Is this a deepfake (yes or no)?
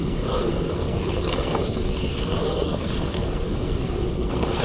yes